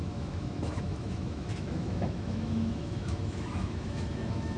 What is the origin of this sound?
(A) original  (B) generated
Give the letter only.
B